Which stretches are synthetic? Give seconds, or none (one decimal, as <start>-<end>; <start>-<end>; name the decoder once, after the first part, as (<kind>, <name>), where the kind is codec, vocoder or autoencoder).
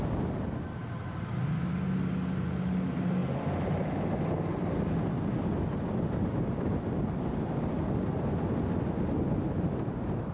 none